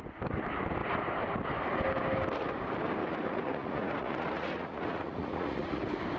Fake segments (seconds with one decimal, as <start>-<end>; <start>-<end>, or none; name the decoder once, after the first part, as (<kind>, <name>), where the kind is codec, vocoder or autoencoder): 3.0-5.8 (vocoder, Vocos)